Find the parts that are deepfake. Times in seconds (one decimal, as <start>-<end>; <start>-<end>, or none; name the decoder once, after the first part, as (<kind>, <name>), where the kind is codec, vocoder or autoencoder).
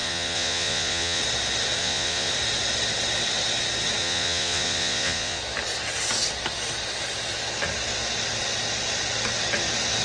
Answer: 0.0-1.2 (vocoder, Vocos); 1.8-2.3; 4.0-5.4